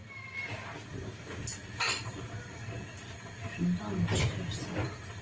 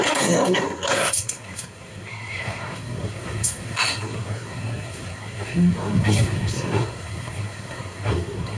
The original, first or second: first